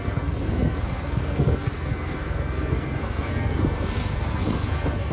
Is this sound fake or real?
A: fake